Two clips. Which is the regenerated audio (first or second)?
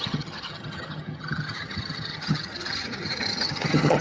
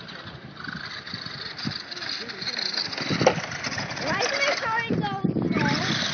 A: first